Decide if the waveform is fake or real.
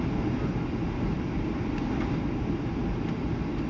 real